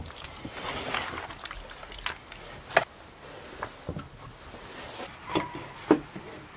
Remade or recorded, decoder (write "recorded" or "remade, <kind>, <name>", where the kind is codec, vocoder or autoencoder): recorded